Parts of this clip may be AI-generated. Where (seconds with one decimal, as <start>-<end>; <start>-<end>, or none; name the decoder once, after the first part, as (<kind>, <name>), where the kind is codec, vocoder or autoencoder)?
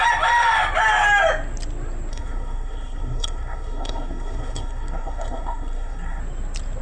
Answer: 2.1-6.2 (codec, SNAC)